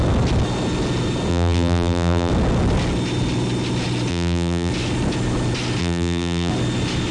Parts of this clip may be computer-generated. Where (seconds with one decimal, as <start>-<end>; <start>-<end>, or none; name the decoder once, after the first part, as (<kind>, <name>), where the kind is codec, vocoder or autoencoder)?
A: 1.3-2.3 (vocoder, BigVGAN v2); 4.1-4.7; 5.8-6.5